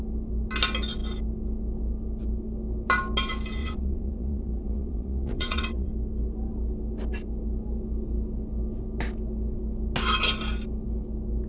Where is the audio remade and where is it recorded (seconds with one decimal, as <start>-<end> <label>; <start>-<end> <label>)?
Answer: 0.0-3.6 recorded; 3.6-5.9 remade; 5.9-11.5 recorded